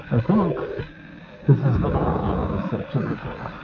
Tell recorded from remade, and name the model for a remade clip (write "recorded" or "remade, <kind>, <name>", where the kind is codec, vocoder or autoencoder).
recorded